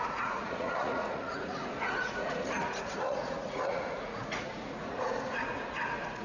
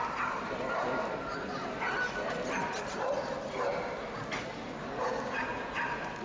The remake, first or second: first